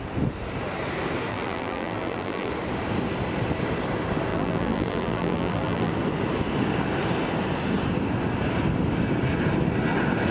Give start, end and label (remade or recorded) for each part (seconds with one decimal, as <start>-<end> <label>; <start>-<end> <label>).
0.0-1.3 recorded; 1.3-2.5 remade; 2.5-4.3 recorded; 4.3-5.9 remade; 5.9-10.3 recorded